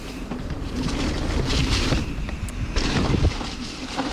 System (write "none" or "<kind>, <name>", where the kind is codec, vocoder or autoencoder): vocoder, BigVGAN v2